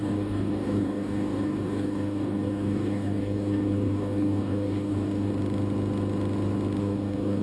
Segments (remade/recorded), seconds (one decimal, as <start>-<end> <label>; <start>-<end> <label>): 0.0-5.3 remade; 5.3-6.8 recorded; 6.8-7.4 remade

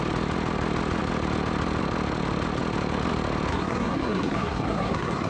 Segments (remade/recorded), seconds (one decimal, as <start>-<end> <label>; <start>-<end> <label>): 0.0-3.5 recorded; 3.5-5.3 remade